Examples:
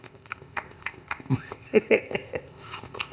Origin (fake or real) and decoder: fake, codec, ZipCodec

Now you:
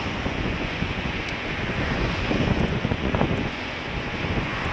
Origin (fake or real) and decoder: fake, vocoder, Vocos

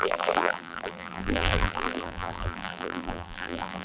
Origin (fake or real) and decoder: fake, vocoder, BigVGAN v2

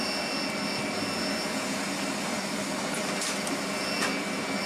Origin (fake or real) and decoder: real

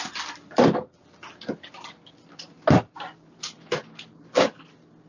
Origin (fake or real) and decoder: real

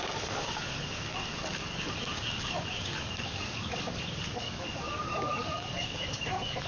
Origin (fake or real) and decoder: fake, codec, DAC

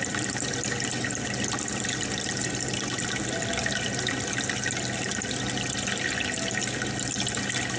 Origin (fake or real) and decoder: real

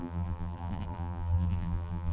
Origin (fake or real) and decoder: fake, vocoder, BigVGAN v2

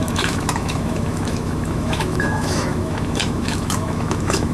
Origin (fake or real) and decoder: fake, autoencoder, DAC-VAE